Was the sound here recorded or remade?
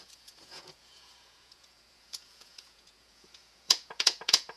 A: remade